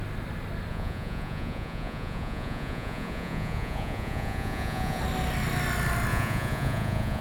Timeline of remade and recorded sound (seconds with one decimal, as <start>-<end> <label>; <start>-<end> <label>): 0.0-0.7 recorded; 0.7-5.0 remade; 5.0-6.1 recorded; 6.1-7.2 remade